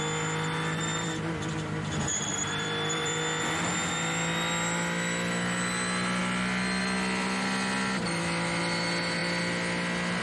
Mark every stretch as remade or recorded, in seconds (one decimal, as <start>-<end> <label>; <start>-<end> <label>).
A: 0.0-0.9 recorded; 0.9-3.2 remade; 3.2-10.2 recorded

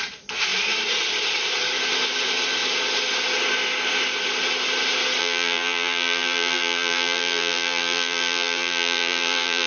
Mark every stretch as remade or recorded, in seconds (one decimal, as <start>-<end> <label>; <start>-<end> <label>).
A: 0.0-5.2 recorded; 5.2-9.7 remade

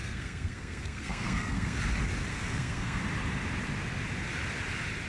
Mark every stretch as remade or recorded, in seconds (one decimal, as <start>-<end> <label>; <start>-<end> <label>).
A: 0.0-1.8 remade; 1.8-2.3 recorded; 2.3-3.0 remade; 3.0-5.1 recorded

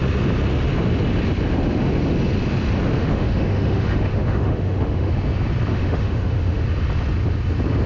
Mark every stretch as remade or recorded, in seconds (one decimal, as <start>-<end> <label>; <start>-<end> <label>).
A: 0.0-3.0 recorded; 3.0-5.1 remade; 5.1-5.7 recorded; 5.7-6.6 remade; 6.6-7.9 recorded

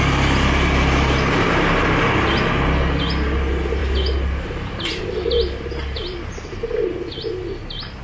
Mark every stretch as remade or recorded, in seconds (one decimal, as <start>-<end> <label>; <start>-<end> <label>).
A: 0.0-8.0 recorded